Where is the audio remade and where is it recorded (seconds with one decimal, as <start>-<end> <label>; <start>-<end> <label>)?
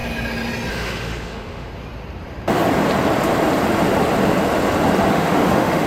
0.0-0.7 recorded; 0.7-1.7 remade; 1.7-5.1 recorded; 5.1-5.9 remade